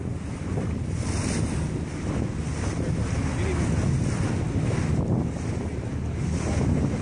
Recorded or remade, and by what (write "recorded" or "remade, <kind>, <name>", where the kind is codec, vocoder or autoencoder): recorded